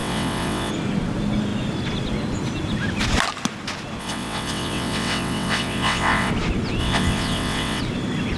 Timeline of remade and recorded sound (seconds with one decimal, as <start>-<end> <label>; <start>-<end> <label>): 0.0-0.7 remade; 0.7-4.0 recorded; 4.0-6.3 remade; 6.3-6.8 recorded; 6.8-7.8 remade; 7.8-8.4 recorded